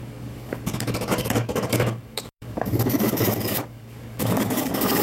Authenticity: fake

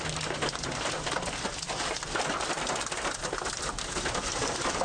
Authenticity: fake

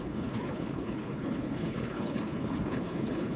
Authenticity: fake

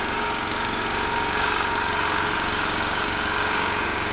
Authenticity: fake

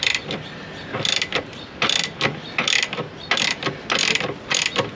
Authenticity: real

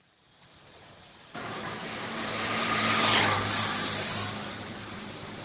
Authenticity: fake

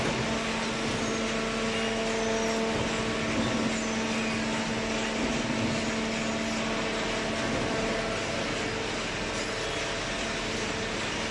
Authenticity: real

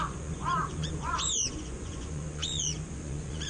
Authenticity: fake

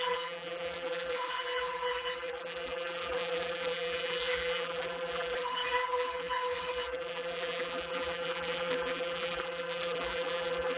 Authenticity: fake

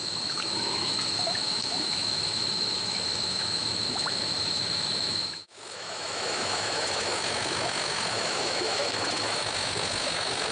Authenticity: fake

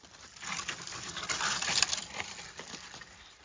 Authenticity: real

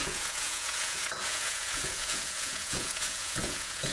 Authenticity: fake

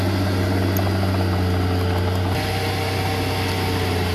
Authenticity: real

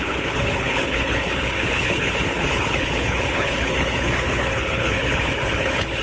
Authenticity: fake